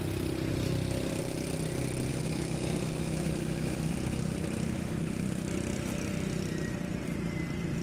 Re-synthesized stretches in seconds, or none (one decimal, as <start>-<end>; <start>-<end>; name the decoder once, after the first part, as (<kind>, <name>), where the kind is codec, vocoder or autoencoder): 2.1-3.9 (autoencoder, DAC-VAE)